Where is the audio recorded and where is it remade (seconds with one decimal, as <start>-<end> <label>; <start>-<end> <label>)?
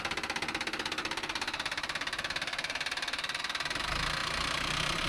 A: 0.0-1.0 recorded; 1.0-3.4 remade; 3.4-4.2 recorded; 4.2-5.1 remade